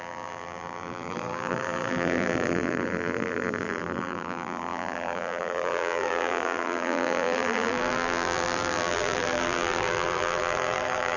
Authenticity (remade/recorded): remade